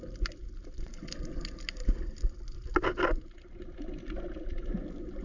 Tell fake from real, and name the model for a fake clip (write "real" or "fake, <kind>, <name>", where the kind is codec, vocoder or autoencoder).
real